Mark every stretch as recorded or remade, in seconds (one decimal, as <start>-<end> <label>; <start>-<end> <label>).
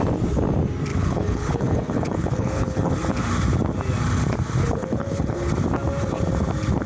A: 0.0-0.9 recorded; 0.9-2.9 remade; 2.9-4.6 recorded; 4.6-5.5 remade; 5.5-6.9 recorded